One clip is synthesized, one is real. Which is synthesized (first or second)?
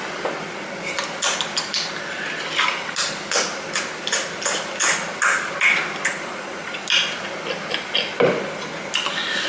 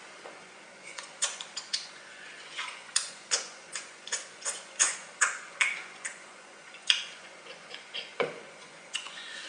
second